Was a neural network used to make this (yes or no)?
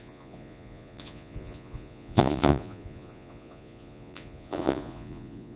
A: yes